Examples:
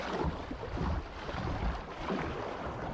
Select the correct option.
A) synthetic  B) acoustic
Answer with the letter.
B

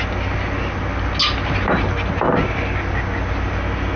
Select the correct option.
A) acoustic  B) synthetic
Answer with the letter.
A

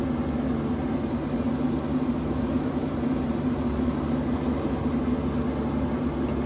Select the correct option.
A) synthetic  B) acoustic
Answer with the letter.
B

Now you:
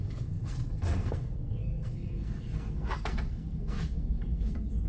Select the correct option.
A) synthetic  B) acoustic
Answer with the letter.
A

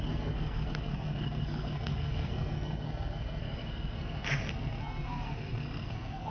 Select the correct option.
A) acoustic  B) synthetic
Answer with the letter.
B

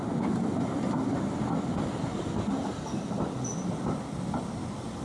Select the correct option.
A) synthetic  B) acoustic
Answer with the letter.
B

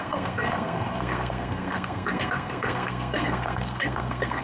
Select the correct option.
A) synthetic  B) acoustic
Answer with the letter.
A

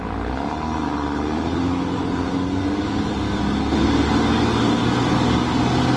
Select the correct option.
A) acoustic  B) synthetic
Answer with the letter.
A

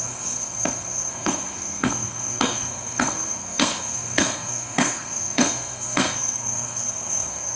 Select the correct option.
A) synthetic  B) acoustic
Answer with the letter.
A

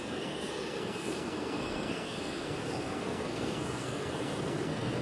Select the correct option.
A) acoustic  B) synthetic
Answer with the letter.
B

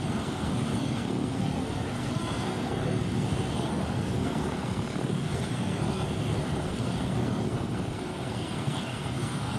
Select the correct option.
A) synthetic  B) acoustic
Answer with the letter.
A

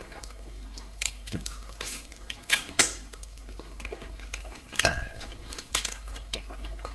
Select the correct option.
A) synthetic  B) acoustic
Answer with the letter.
A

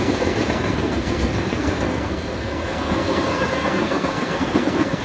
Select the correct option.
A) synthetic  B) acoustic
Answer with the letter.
A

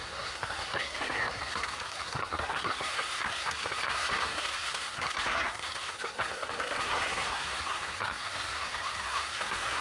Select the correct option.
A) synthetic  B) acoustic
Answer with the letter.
A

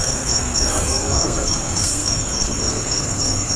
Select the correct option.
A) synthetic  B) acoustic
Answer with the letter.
A